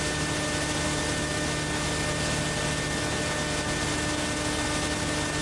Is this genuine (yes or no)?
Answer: yes